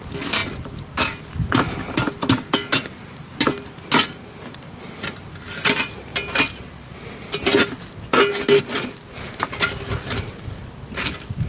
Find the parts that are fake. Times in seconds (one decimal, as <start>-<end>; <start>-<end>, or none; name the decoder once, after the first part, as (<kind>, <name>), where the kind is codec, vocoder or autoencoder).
none